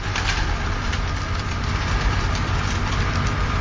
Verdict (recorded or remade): recorded